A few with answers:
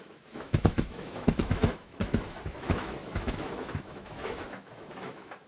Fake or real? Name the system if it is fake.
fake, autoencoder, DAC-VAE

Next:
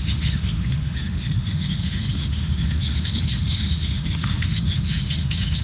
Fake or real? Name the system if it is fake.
fake, autoencoder, DAC-VAE